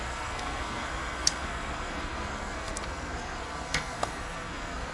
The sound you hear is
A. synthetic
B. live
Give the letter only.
A